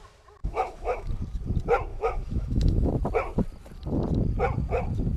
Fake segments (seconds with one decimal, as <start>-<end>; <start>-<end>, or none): 0.4-1.1; 1.9-2.9